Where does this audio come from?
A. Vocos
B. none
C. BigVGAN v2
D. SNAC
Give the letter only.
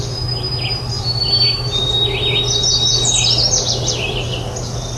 B